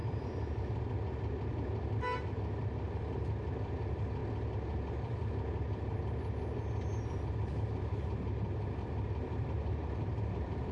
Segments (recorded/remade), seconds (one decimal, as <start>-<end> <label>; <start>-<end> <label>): 0.0-0.8 remade; 0.8-8.8 recorded; 8.8-10.7 remade